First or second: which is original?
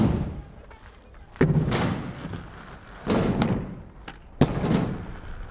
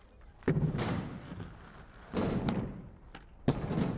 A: first